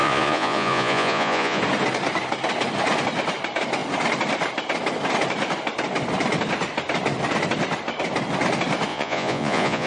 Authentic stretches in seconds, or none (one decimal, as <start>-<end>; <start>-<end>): 1.6-8.9

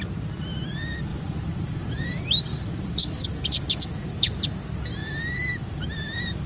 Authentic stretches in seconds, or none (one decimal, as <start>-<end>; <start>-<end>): 0.0-1.1; 3.6-5.0

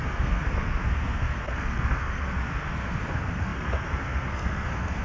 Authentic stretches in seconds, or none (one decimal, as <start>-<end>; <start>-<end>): none

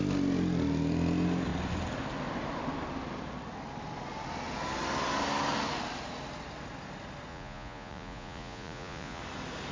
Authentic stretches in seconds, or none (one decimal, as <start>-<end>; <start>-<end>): 0.0-7.3; 9.2-9.7